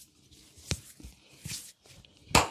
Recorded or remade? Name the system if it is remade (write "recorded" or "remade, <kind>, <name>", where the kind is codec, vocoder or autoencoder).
recorded